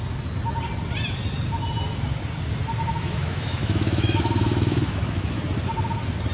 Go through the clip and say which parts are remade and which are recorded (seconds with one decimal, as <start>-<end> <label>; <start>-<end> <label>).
0.0-2.9 recorded; 2.9-5.4 remade; 5.4-6.3 recorded